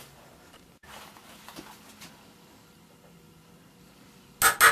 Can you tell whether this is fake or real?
real